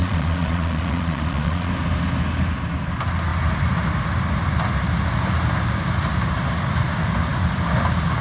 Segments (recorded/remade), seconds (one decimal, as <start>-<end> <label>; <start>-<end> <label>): 0.0-1.7 remade; 1.7-8.2 recorded